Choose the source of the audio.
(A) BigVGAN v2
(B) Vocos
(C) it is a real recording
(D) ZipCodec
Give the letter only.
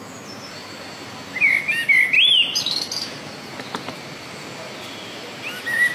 C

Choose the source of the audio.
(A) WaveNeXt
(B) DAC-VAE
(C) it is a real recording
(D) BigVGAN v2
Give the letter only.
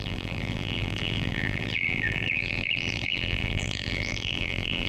D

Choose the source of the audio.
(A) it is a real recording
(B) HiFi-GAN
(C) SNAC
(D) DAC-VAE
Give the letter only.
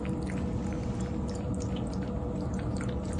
A